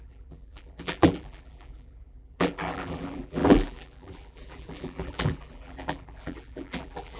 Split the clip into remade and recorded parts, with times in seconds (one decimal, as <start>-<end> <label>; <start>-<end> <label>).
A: 0.0-7.2 remade